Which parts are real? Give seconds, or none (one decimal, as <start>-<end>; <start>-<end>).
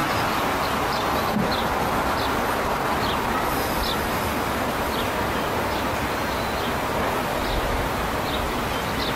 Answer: 0.0-9.2